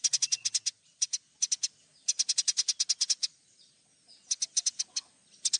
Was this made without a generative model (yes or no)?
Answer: yes